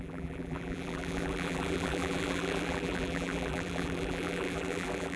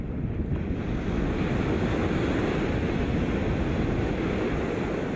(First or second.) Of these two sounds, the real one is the second